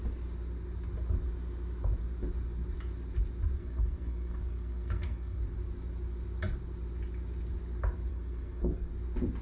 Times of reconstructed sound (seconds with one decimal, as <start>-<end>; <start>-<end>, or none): 3.6-5.4; 8.1-8.9